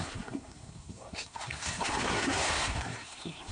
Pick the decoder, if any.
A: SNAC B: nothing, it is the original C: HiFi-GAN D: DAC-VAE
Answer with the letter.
A